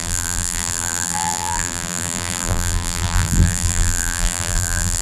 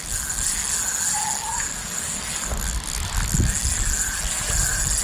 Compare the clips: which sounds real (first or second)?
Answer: second